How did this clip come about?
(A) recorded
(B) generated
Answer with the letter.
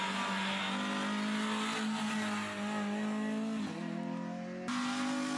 A